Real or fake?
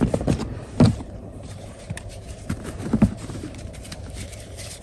fake